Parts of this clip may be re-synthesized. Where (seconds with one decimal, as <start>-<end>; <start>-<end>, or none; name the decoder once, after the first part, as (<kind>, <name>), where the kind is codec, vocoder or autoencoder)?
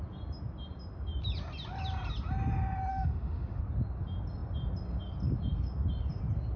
2.9-3.6 (autoencoder, DAC-VAE)